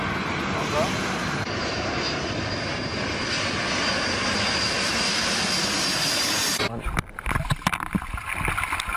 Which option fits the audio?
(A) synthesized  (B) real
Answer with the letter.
B